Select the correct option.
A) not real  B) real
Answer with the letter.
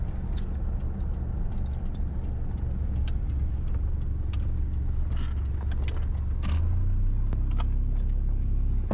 B